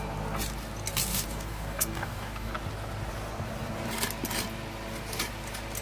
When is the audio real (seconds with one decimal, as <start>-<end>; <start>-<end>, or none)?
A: 0.0-1.1; 2.5-5.8